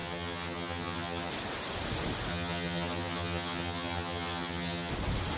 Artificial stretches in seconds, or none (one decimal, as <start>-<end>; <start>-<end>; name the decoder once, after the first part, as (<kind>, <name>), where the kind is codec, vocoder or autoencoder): 0.0-1.3 (vocoder, HiFi-GAN); 2.3-4.9